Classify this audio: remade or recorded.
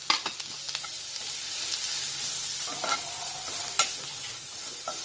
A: recorded